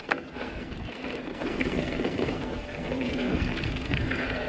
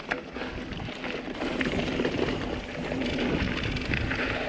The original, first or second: second